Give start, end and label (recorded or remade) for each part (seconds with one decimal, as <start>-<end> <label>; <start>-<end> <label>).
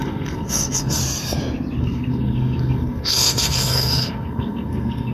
0.0-1.0 remade; 1.0-1.8 recorded; 1.8-5.1 remade